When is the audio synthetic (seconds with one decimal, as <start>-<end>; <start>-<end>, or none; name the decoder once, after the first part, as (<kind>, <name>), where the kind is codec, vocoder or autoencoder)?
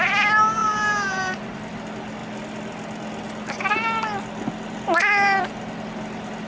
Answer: 0.6-1.6 (vocoder, BigVGAN v2)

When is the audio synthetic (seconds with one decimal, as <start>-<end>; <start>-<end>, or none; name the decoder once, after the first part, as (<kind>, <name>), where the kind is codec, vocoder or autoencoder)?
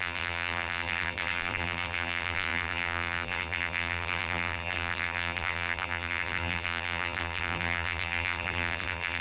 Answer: 0.0-9.2 (vocoder, BigVGAN v2)